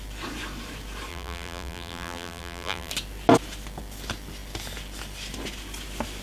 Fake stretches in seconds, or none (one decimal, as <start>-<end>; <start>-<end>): 1.1-2.9